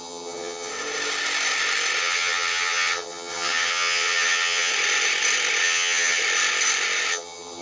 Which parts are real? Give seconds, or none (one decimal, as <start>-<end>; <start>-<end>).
0.7-2.0; 4.7-5.6; 6.2-7.1